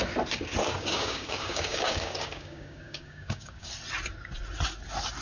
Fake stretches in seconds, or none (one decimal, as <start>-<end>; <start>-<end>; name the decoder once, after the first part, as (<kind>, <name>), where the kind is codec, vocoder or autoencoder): 0.6-3.7 (codec, DAC)

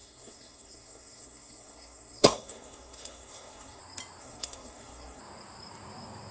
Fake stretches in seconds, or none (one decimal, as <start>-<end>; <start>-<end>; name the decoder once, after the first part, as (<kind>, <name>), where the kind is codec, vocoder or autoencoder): 0.0-3.8 (codec, SNAC); 4.2-5.2